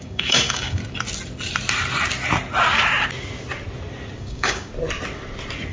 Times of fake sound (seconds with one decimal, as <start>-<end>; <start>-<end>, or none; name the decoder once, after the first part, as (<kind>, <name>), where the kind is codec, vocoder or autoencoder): 0.0-0.8 (codec, DAC); 4.2-4.7